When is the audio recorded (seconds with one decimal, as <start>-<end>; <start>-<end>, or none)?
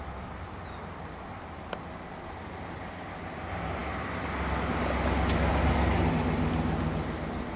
0.0-7.6